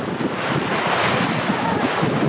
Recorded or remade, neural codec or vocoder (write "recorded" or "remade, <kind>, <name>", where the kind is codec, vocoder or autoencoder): recorded